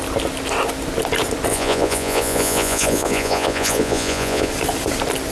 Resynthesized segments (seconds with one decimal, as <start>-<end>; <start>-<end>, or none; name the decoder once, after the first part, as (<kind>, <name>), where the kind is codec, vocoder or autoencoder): 1.5-4.5 (vocoder, Vocos)